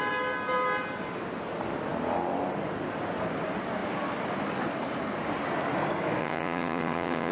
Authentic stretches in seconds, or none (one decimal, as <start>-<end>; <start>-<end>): 0.0-6.2